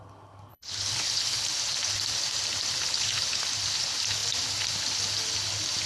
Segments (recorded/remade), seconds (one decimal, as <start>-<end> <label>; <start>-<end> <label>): 0.0-0.5 recorded; 0.5-1.4 remade; 1.4-2.9 recorded; 2.9-3.4 remade; 3.4-5.9 recorded